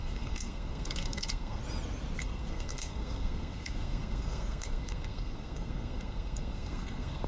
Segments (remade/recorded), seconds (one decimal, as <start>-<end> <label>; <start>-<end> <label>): 0.0-1.6 remade; 1.6-2.2 recorded; 2.2-7.3 remade